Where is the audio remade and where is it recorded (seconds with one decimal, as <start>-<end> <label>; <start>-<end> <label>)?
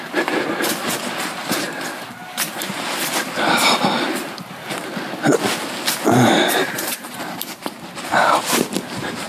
0.0-6.6 recorded; 6.6-7.6 remade; 7.6-9.3 recorded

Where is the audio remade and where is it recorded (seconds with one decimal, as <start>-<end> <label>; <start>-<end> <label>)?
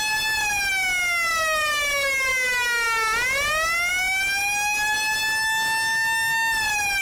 0.0-7.0 recorded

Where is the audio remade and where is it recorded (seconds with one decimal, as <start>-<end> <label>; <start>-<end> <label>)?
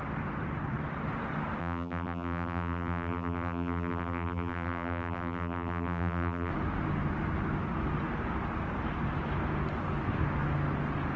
0.0-1.6 recorded; 1.6-6.5 remade; 6.5-11.2 recorded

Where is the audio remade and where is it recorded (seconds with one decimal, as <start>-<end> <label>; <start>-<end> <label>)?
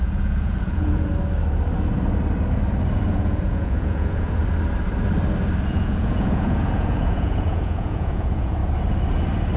0.0-1.1 remade; 1.1-3.1 recorded; 3.1-4.4 remade; 4.4-5.7 recorded; 5.7-8.6 remade; 8.6-9.6 recorded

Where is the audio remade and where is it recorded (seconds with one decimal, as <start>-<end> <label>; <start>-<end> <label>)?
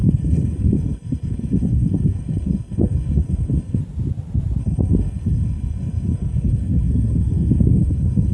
0.0-3.8 remade; 3.8-4.6 recorded; 4.6-8.3 remade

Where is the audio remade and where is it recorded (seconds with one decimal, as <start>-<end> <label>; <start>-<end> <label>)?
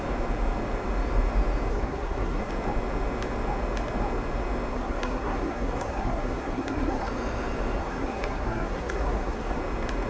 0.0-1.7 recorded; 1.7-2.5 remade; 2.5-4.7 recorded; 4.7-7.1 remade; 7.1-7.8 recorded; 7.8-9.6 remade; 9.6-10.1 recorded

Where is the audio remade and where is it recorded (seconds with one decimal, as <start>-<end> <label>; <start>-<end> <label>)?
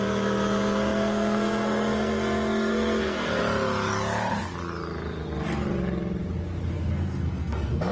0.0-3.4 remade; 3.4-6.7 recorded; 6.7-7.9 remade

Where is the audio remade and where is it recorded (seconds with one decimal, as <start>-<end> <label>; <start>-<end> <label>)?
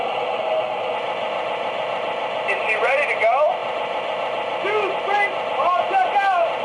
0.0-6.6 recorded